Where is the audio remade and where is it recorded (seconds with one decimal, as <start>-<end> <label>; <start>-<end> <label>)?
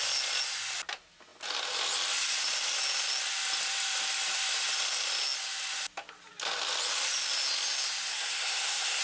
0.0-8.1 recorded; 8.1-9.0 remade